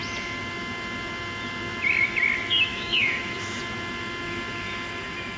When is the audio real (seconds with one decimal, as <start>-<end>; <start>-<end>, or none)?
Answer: 0.0-2.7; 3.6-5.4